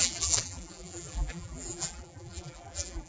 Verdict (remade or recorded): remade